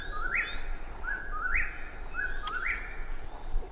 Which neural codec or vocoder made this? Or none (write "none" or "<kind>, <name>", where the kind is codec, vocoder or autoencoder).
none